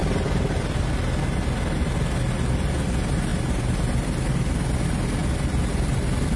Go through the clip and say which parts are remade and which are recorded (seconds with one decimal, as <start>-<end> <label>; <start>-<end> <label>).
0.0-0.8 remade; 0.8-3.3 recorded; 3.3-4.2 remade; 4.2-5.2 recorded; 5.2-6.4 remade